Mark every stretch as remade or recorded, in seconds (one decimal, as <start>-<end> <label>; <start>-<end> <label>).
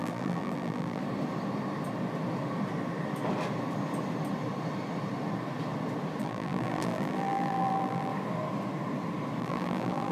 0.0-1.0 remade; 1.0-6.2 recorded; 6.2-8.1 remade; 8.1-9.4 recorded; 9.4-10.1 remade